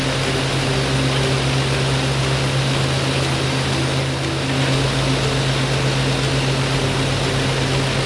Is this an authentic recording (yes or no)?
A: yes